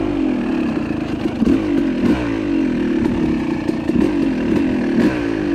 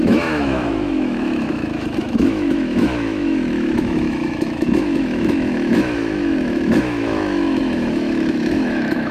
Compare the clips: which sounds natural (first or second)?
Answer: first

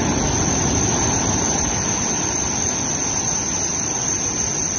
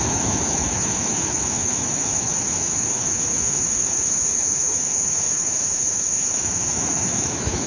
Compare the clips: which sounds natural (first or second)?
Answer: first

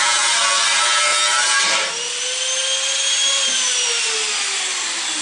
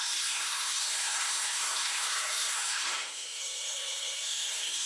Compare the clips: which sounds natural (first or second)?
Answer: first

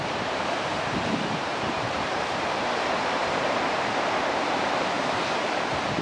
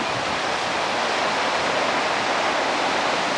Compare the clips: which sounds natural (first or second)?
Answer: second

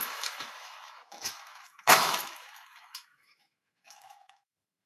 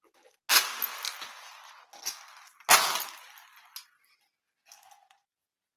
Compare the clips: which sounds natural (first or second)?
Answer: second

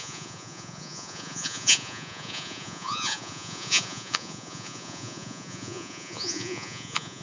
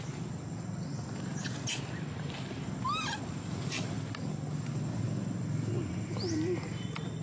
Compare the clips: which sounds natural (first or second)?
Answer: second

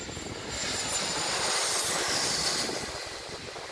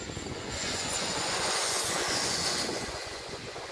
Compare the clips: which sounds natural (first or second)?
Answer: first